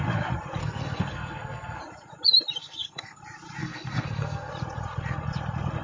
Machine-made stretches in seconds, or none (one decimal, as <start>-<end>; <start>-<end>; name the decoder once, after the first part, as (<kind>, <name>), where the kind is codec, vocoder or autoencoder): 0.6-1.8 (codec, SNAC); 2.6-3.2; 3.6-4.5